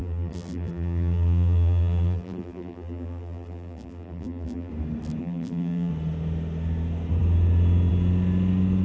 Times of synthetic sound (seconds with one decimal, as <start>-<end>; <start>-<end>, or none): 0.0-4.7; 5.2-5.9